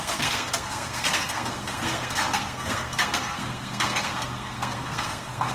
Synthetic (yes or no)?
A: yes